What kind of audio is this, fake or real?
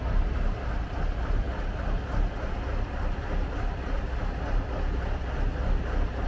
real